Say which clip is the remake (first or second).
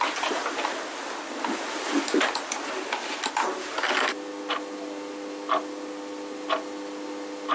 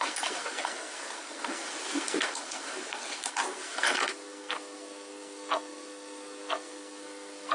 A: second